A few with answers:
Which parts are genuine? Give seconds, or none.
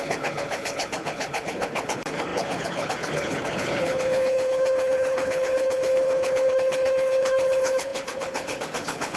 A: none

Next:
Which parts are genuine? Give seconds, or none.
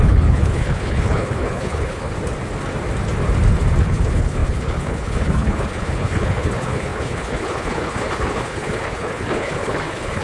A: 2.1-3.8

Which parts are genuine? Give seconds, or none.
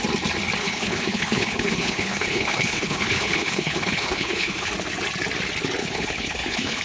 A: 0.0-0.6; 4.7-5.8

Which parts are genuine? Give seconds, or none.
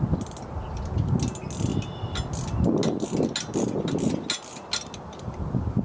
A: 0.0-5.8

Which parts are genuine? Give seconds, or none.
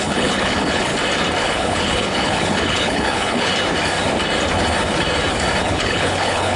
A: 0.9-1.4; 3.5-5.6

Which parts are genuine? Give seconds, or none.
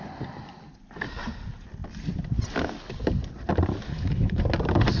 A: 0.0-3.9; 4.4-5.0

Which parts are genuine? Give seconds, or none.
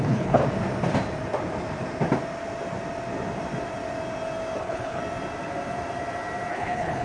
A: 0.4-4.6; 5.0-6.5